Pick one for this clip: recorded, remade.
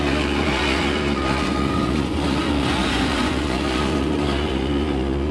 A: remade